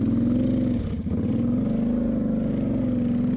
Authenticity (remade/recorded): recorded